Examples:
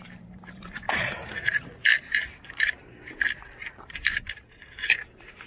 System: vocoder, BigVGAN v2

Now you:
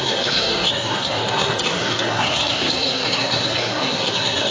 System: codec, SNAC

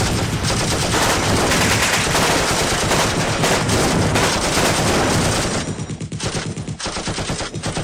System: none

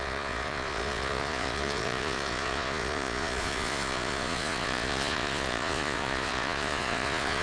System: vocoder, Vocos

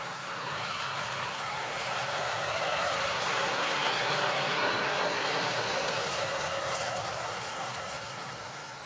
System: codec, SNAC